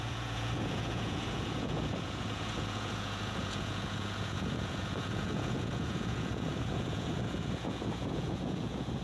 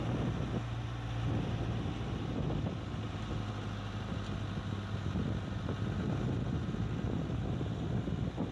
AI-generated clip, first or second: first